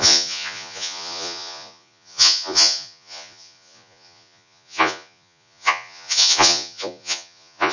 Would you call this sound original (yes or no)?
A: no